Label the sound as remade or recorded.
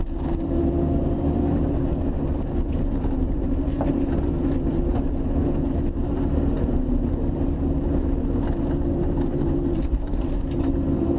remade